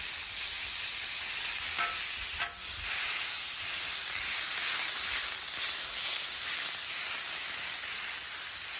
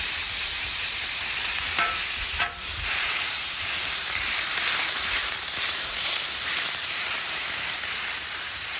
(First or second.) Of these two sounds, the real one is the first